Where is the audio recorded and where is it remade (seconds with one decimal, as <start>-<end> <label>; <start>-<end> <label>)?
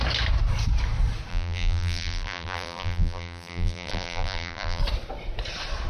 0.0-1.3 recorded; 1.3-4.8 remade; 4.8-5.9 recorded